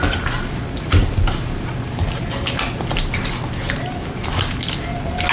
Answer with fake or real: real